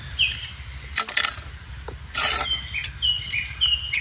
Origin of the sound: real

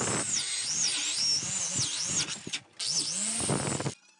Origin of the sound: real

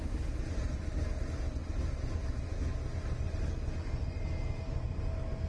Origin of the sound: real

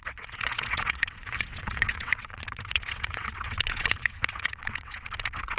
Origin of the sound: fake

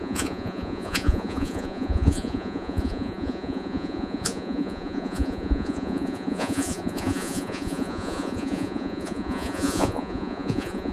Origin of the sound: fake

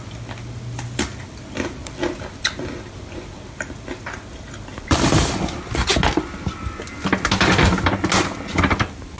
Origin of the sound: real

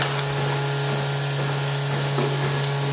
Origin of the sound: real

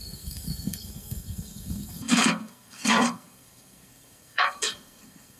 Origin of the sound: fake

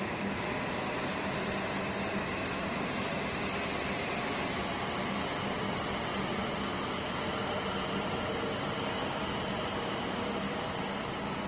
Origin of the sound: real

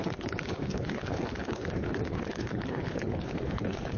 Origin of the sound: fake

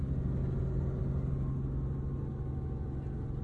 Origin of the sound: real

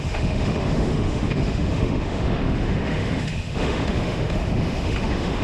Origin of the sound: fake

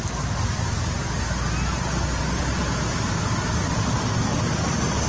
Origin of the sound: real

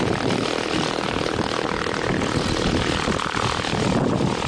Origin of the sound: real